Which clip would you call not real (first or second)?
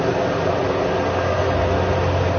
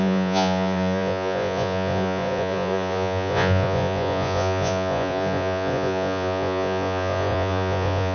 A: second